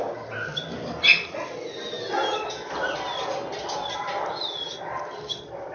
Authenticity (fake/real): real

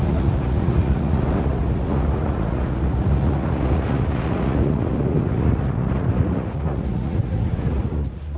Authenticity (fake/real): fake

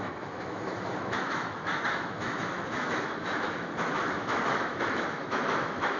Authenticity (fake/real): fake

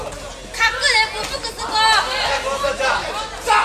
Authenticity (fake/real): real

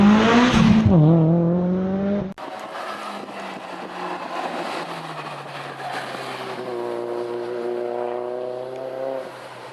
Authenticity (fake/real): real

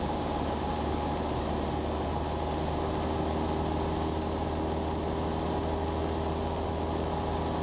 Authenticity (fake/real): real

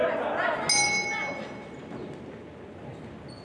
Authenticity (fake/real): real